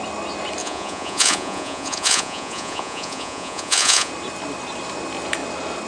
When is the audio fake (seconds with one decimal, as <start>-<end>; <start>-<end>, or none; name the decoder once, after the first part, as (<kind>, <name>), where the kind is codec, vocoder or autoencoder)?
0.6-4.1 (vocoder, Vocos)